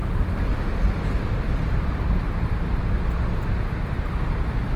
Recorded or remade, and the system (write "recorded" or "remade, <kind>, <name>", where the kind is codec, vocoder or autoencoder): recorded